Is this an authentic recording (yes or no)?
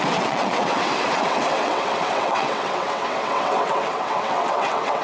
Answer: no